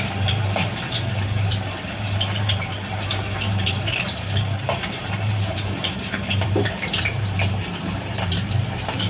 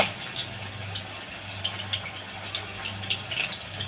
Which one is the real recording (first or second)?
second